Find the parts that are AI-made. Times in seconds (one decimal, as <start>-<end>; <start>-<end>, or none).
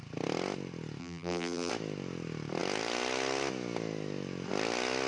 1.0-1.7